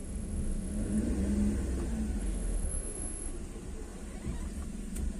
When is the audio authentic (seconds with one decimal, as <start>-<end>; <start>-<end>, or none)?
1.0-2.2; 3.3-5.2